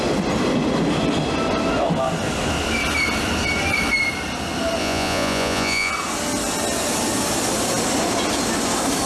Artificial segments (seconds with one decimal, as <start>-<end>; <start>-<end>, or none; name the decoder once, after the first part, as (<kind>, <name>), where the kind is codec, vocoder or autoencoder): 4.8-5.9 (vocoder, Vocos)